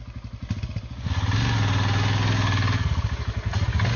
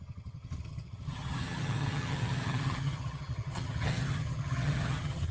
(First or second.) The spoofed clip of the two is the second